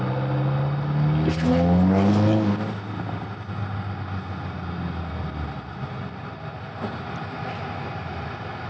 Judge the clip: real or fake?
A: real